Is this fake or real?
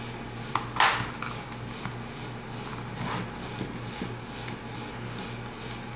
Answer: real